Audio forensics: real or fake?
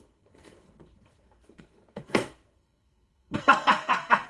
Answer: fake